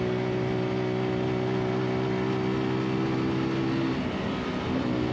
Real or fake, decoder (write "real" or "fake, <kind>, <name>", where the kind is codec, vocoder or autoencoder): real